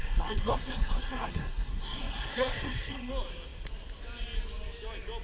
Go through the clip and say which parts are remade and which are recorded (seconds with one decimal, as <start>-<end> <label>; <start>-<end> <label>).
0.0-3.1 remade; 3.1-5.2 recorded